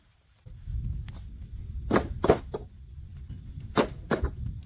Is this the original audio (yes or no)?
yes